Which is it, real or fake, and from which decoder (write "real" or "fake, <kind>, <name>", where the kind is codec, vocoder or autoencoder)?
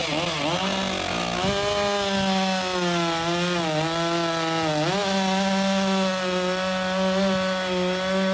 real